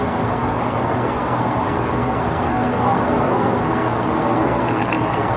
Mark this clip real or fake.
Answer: fake